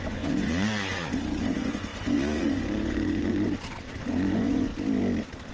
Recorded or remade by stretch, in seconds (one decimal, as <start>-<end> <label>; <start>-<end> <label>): 0.0-4.7 remade; 4.7-5.5 recorded